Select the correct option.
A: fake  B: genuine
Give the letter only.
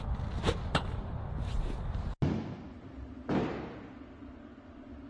B